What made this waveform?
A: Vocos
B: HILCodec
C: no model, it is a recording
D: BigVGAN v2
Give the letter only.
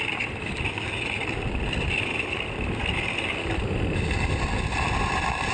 D